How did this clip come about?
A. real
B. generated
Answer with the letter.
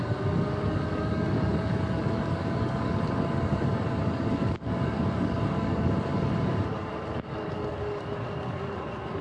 B